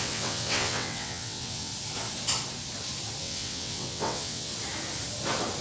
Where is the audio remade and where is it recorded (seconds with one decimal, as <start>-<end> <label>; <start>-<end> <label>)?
0.0-1.7 remade; 1.7-3.2 recorded; 3.2-4.5 remade; 4.5-5.6 recorded